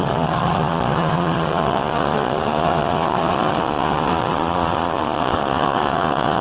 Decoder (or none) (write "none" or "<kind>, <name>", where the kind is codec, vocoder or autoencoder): vocoder, Vocos